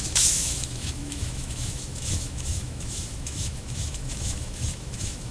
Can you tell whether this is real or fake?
fake